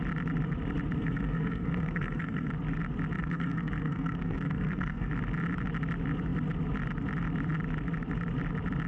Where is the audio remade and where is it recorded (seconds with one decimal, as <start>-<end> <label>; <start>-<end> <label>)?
0.0-1.0 recorded; 1.0-2.5 remade; 2.5-3.2 recorded; 3.2-5.1 remade; 5.1-8.9 recorded